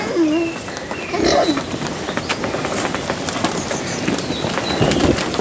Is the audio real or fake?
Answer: real